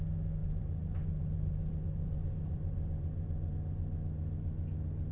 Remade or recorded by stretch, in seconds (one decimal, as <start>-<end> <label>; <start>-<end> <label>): 0.0-0.4 recorded; 0.4-3.5 remade; 3.5-5.1 recorded